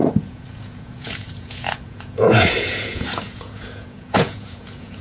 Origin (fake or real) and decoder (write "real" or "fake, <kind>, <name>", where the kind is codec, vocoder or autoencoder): fake, vocoder, Vocos